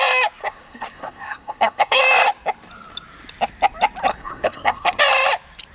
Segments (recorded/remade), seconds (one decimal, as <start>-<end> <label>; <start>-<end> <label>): 0.0-0.4 recorded; 0.4-2.0 remade; 2.0-4.1 recorded; 4.1-5.0 remade; 5.0-5.7 recorded